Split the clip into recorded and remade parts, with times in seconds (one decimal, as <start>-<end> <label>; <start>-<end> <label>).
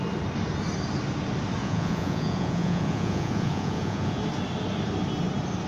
0.0-1.6 recorded; 1.6-4.2 remade; 4.2-5.7 recorded